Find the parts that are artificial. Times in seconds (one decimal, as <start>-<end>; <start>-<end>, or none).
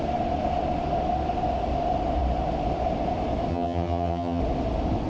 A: 3.5-4.4